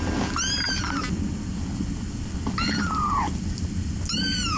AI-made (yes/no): no